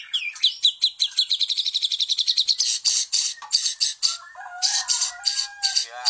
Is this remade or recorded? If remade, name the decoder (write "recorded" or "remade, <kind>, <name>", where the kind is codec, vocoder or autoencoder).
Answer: recorded